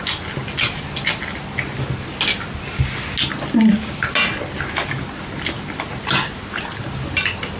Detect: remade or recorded recorded